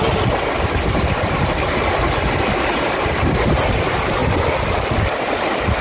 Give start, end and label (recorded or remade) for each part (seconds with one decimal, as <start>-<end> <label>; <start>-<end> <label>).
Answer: 0.0-5.8 recorded